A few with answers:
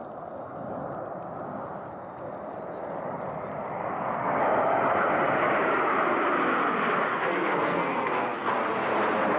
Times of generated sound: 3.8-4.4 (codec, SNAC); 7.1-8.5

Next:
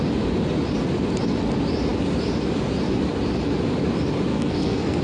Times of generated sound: 4.3-5.0 (codec, SNAC)

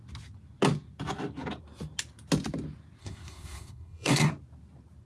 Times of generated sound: 3.0-4.3 (codec, SNAC)

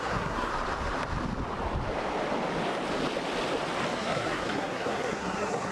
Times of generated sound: 0.0-0.5 (codec, SNAC); 3.9-5.7

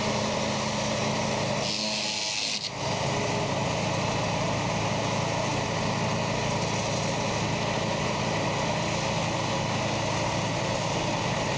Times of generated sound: none

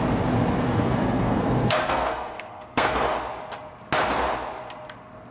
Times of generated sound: 0.7-3.1 (codec, SNAC)